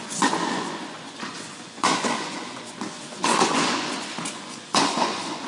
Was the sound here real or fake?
fake